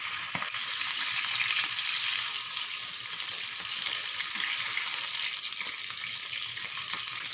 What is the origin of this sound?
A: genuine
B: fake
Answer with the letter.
A